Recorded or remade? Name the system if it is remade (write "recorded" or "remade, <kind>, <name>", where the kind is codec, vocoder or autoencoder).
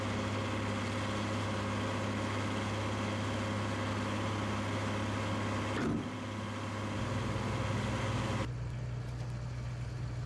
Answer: recorded